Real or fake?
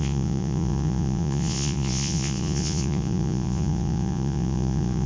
fake